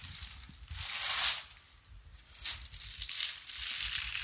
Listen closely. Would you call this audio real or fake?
real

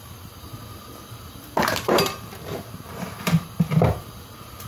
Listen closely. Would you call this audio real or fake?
fake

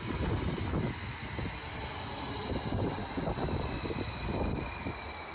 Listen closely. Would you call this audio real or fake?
real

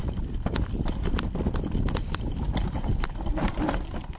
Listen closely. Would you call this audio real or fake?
fake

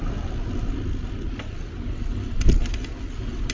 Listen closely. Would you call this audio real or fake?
real